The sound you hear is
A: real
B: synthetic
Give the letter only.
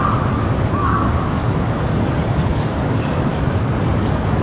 B